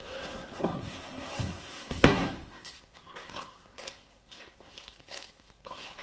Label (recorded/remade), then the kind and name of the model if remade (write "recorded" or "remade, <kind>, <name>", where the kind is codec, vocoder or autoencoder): remade, codec, SNAC